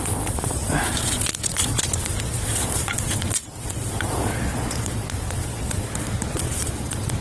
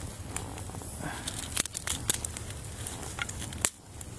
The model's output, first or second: first